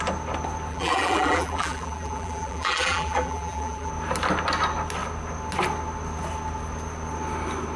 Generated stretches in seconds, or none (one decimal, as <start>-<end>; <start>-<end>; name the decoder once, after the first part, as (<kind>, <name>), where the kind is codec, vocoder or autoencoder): 0.7-3.9 (vocoder, BigVGAN v2)